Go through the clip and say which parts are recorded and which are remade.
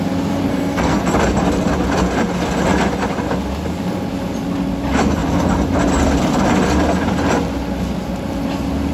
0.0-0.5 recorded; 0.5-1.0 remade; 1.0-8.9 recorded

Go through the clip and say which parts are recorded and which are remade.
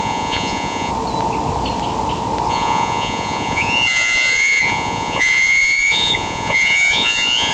0.0-0.9 remade; 0.9-2.5 recorded; 2.5-7.5 remade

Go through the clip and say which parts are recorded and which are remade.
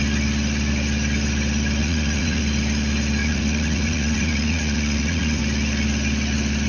0.0-1.8 recorded; 1.8-2.4 remade; 2.4-3.2 recorded; 3.2-5.4 remade; 5.4-6.7 recorded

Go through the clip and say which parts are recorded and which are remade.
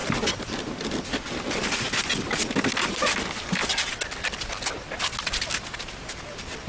0.0-0.6 remade; 0.6-6.7 recorded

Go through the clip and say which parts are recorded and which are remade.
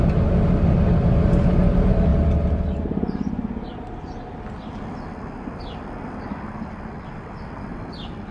0.0-8.3 recorded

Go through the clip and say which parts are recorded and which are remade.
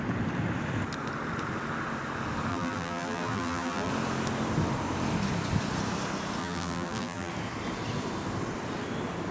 0.0-2.5 recorded; 2.5-3.9 remade; 3.9-6.4 recorded; 6.4-7.3 remade; 7.3-9.3 recorded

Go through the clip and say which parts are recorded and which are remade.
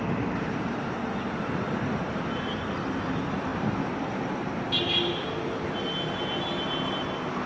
0.0-7.5 recorded